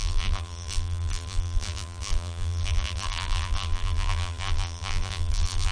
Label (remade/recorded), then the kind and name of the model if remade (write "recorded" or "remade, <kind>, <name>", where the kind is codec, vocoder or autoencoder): remade, vocoder, BigVGAN v2